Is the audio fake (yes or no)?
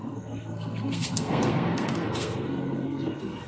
yes